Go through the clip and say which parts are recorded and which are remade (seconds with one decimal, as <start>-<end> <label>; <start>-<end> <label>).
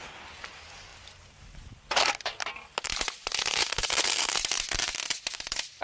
0.0-3.6 recorded; 3.6-4.3 remade; 4.3-5.8 recorded